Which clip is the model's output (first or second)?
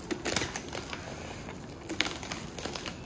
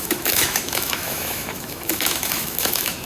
second